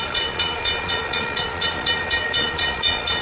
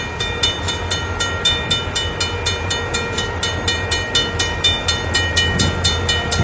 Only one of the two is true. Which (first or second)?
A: second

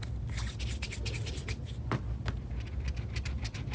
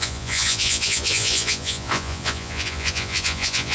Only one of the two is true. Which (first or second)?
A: first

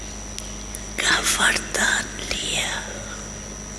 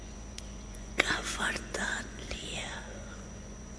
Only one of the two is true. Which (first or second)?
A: first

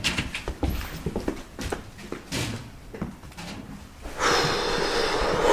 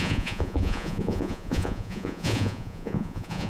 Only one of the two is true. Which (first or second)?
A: first